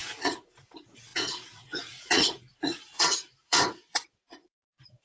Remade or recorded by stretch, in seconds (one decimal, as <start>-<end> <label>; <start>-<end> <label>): 0.0-5.0 remade

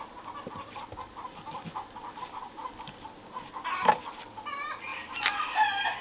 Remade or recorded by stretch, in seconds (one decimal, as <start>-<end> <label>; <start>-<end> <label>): 0.0-1.0 recorded; 1.0-3.5 remade; 3.5-4.9 recorded; 4.9-6.0 remade

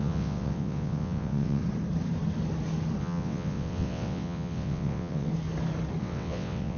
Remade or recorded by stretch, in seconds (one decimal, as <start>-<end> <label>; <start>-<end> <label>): 0.0-1.6 remade; 1.6-3.0 recorded; 3.0-5.3 remade; 5.3-6.0 recorded; 6.0-6.8 remade

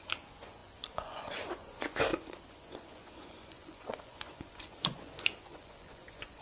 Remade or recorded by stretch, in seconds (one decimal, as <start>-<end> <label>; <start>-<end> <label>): 0.0-6.4 remade

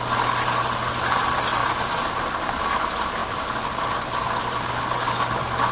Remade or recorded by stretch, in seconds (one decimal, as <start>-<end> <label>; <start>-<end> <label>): 0.0-5.7 recorded

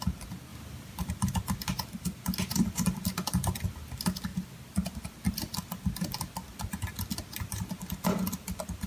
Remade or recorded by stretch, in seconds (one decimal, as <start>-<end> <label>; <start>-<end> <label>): 0.0-4.3 recorded; 4.3-5.1 remade; 5.1-8.9 recorded